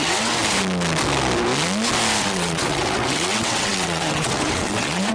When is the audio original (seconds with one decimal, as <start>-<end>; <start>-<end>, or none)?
0.4-2.2